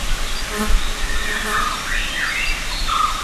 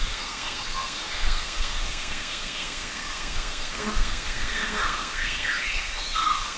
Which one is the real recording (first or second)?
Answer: first